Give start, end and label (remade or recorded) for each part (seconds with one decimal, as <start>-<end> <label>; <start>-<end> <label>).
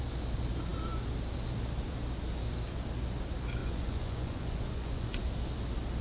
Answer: 0.0-3.6 recorded; 3.6-5.1 remade; 5.1-6.0 recorded